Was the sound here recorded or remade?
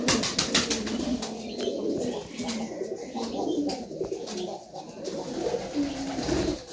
recorded